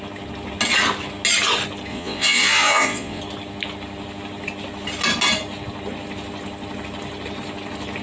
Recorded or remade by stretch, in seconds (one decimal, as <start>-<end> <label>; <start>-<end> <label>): 0.0-1.9 recorded; 1.9-3.2 remade; 3.2-8.0 recorded